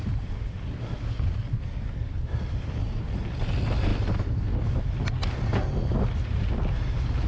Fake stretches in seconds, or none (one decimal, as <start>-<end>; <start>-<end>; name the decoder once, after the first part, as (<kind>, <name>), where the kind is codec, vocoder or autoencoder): none